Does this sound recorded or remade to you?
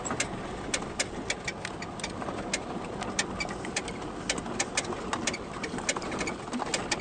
recorded